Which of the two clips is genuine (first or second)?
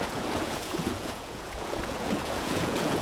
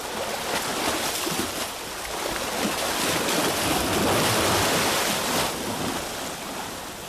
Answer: second